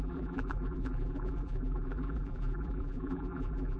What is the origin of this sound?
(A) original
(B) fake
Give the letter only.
B